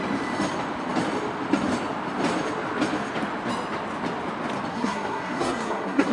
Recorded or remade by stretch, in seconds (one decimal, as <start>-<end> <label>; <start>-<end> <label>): 0.0-4.7 recorded; 4.7-6.1 remade